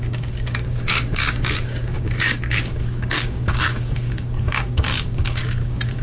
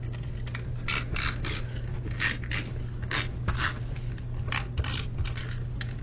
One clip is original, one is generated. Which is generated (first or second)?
first